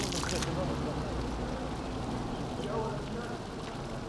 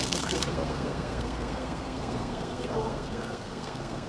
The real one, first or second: first